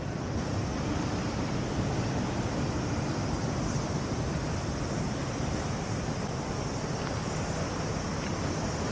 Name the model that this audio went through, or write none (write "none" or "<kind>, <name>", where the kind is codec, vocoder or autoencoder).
none